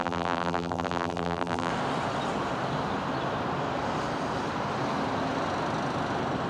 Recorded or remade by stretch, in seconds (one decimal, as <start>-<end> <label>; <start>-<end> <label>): 0.0-1.7 remade; 1.7-6.5 recorded